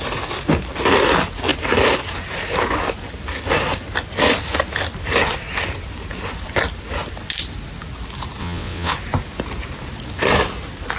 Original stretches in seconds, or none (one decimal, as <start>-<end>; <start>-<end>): 0.0-8.4; 8.9-11.0